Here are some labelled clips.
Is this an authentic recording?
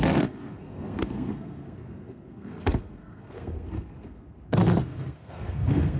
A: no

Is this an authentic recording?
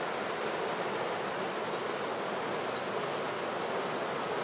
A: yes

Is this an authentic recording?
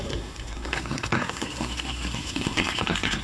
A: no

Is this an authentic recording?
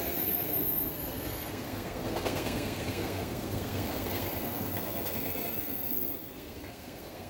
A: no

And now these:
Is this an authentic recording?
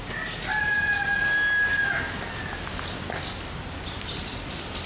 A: yes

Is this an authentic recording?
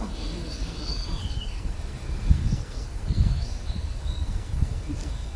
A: no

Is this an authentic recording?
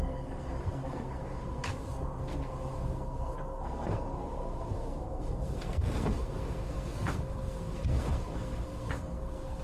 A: no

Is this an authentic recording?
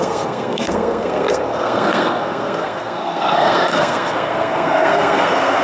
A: no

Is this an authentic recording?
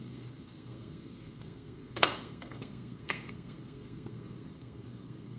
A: no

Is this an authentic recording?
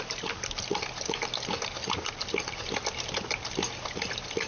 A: yes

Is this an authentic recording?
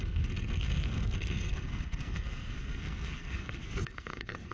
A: no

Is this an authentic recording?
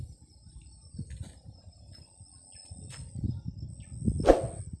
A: yes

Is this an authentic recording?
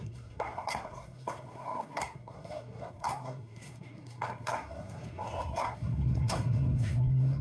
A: no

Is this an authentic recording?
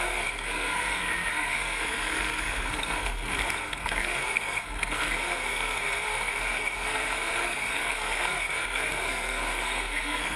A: no